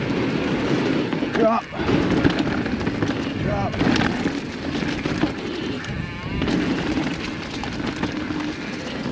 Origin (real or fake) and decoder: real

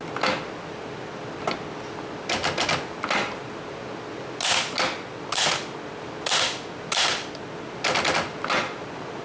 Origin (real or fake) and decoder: real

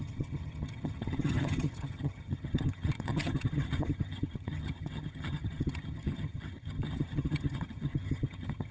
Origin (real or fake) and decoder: fake, vocoder, HiFi-GAN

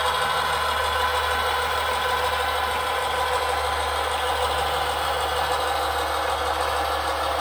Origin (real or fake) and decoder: real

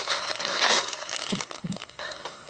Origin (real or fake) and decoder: fake, codec, SNAC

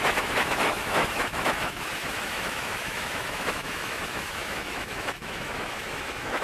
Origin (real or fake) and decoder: fake, autoencoder, DAC-VAE